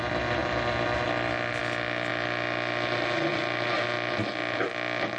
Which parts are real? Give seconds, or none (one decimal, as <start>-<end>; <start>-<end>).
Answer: 0.0-5.2